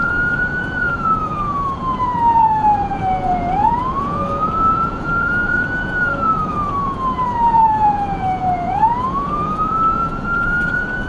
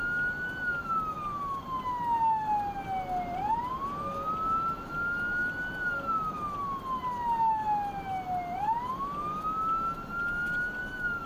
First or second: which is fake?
first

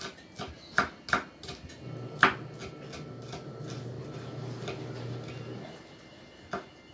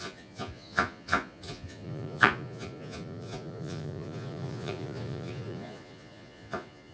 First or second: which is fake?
second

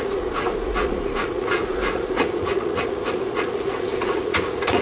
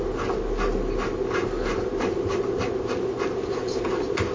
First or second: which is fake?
first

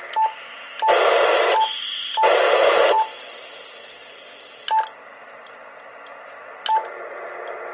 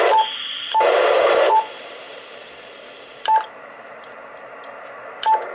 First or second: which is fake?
second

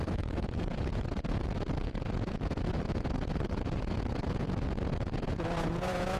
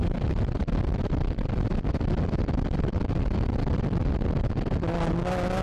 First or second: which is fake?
first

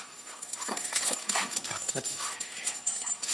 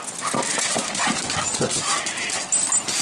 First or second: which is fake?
first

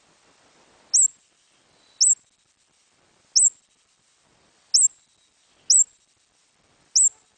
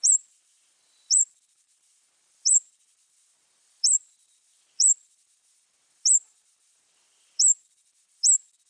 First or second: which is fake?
second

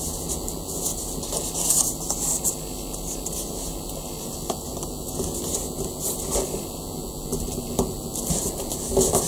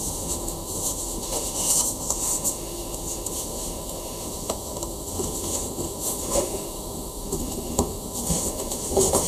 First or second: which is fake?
second